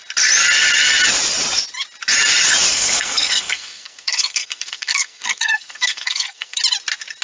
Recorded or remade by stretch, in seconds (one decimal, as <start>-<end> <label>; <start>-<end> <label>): 0.0-2.7 recorded; 2.7-6.6 remade; 6.6-7.2 recorded